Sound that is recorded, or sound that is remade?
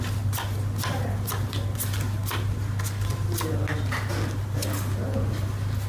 recorded